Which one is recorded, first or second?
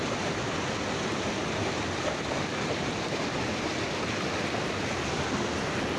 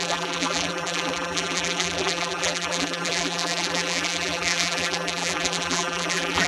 first